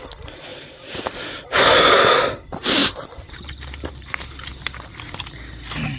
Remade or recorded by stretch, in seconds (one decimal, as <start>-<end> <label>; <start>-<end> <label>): 0.0-0.5 recorded; 0.5-1.1 remade; 1.1-2.8 recorded; 2.8-4.9 remade; 4.9-6.0 recorded